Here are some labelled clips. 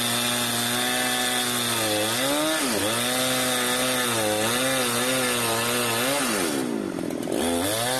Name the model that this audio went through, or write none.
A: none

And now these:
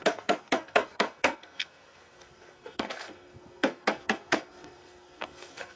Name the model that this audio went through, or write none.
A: codec, SNAC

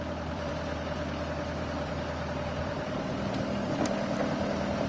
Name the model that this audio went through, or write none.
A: vocoder, BigVGAN v2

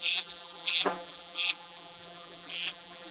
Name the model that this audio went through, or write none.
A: vocoder, BigVGAN v2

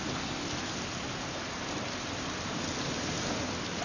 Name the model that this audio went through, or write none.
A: none